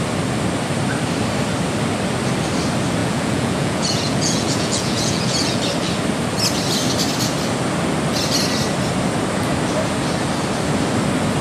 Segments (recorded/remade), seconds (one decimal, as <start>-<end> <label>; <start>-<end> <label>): 0.0-3.0 recorded; 3.0-5.6 remade; 5.6-11.4 recorded